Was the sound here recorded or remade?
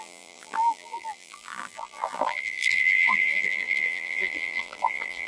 remade